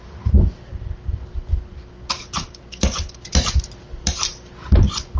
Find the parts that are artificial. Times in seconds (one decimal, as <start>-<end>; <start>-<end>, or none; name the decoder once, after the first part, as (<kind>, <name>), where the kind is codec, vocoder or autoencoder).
none